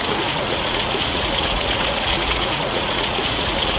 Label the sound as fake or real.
fake